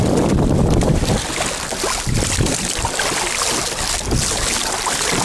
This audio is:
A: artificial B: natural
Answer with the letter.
B